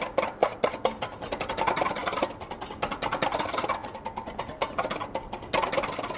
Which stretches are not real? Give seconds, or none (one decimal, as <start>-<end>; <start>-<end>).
none